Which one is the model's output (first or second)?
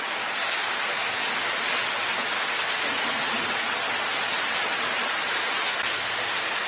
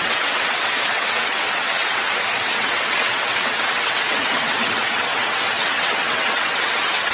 second